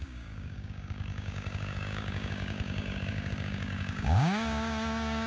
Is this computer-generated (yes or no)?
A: yes